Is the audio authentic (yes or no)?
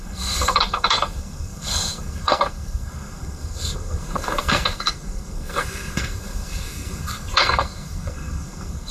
no